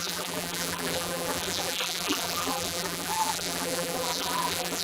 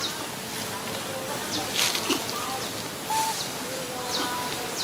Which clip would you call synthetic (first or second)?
first